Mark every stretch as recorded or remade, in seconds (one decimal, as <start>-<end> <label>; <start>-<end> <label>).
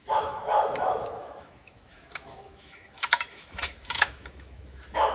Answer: 0.0-5.1 remade